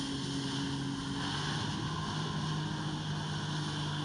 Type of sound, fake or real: real